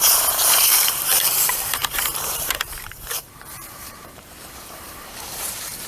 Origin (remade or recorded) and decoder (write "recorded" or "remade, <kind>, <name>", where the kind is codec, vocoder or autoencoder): remade, vocoder, BigVGAN v2